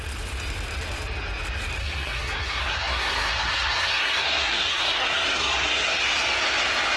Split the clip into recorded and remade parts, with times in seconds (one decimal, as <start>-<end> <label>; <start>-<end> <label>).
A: 0.0-1.8 recorded; 1.8-6.0 remade; 6.0-7.0 recorded